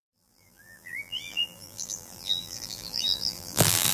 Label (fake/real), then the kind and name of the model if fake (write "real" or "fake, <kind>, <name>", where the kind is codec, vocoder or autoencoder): fake, vocoder, BigVGAN v2